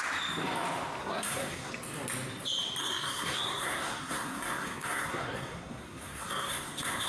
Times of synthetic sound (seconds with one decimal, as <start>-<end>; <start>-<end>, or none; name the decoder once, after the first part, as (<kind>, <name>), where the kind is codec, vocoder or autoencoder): 1.0-1.7 (codec, SNAC); 2.8-7.1